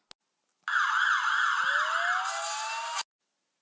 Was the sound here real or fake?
real